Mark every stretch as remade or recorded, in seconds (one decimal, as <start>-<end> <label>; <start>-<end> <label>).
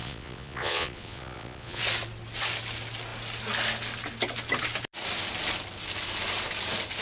0.0-1.8 remade; 1.8-7.0 recorded